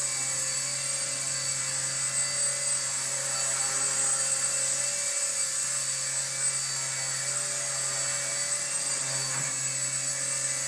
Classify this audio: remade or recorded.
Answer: recorded